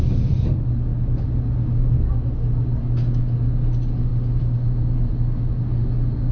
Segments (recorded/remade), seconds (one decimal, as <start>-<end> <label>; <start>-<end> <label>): 0.0-6.3 recorded